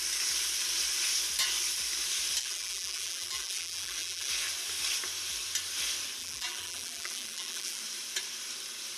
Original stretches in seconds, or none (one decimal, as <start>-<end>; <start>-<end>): 0.0-2.4; 4.3-6.2; 7.8-9.0